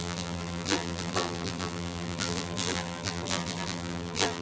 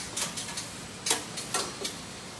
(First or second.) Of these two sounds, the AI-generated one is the first